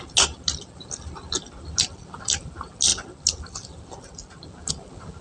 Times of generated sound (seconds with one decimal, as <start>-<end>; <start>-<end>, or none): none